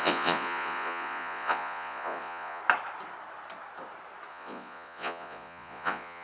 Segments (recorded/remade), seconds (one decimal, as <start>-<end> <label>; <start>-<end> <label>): 0.0-2.6 remade; 2.6-4.3 recorded; 4.3-6.2 remade